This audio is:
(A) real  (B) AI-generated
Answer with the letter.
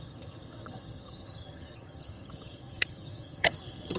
B